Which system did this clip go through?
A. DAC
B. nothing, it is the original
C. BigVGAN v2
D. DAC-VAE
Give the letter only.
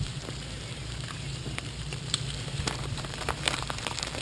C